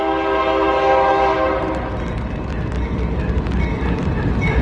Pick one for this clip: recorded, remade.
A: recorded